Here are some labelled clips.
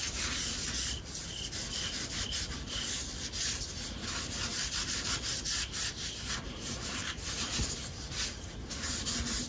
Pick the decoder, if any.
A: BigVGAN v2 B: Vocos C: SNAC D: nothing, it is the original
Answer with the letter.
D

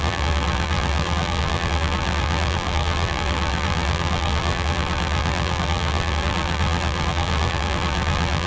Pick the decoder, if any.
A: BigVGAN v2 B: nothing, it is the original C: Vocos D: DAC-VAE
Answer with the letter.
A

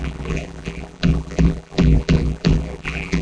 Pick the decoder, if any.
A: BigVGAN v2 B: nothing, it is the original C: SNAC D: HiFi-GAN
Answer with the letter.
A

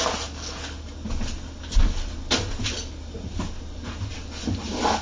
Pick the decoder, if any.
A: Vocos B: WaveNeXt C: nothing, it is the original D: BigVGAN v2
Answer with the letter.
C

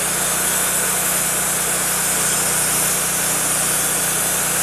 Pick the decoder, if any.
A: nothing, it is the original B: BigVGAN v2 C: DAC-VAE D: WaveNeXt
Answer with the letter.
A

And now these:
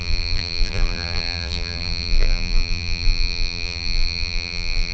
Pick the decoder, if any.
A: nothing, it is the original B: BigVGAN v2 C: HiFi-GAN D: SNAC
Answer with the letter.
B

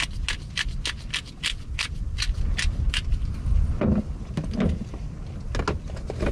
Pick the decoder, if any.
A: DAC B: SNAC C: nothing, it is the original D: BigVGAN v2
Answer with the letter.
C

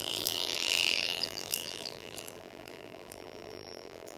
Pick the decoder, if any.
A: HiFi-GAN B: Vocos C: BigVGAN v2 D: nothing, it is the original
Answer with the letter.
C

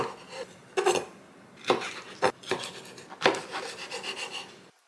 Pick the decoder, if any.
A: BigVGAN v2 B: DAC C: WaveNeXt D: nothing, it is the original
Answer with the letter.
A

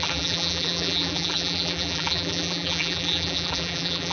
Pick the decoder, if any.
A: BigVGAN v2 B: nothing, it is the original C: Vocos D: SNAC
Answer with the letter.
A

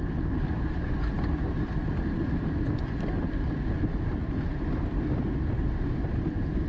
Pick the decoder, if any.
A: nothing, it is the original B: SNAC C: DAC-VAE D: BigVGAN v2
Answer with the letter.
A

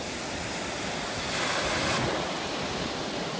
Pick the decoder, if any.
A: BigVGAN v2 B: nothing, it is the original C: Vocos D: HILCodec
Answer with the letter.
B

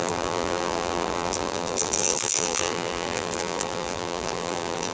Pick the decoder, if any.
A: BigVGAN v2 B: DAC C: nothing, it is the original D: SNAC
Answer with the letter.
A